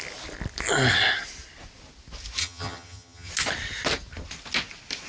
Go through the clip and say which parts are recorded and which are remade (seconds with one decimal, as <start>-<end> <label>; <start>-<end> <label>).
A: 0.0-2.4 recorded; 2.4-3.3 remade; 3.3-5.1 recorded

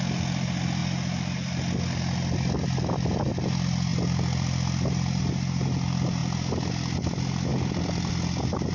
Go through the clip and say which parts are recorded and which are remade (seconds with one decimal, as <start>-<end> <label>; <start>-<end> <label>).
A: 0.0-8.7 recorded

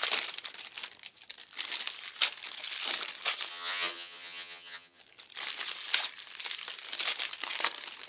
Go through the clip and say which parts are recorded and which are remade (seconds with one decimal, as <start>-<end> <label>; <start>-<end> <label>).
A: 0.0-3.5 recorded; 3.5-5.0 remade; 5.0-8.1 recorded